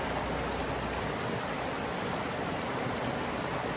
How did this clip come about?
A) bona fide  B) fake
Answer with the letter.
A